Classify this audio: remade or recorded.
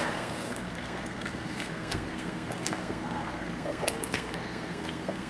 remade